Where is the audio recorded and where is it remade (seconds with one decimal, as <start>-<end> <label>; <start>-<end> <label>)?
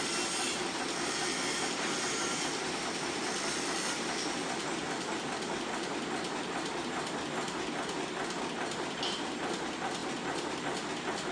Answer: 0.0-11.3 recorded